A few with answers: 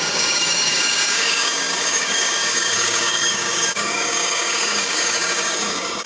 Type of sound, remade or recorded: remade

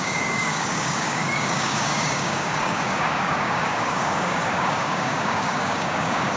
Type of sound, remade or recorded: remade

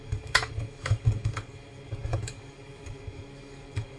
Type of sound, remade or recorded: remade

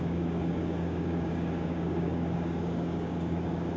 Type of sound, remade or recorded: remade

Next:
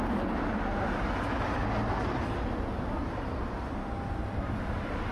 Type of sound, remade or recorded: recorded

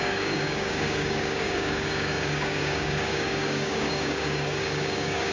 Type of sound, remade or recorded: remade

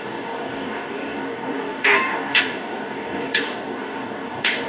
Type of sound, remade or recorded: remade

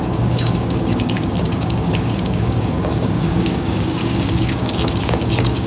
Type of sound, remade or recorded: remade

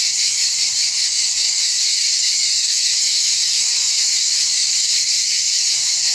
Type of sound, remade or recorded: remade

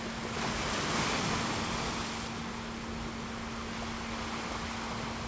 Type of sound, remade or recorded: recorded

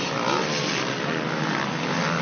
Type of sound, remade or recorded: recorded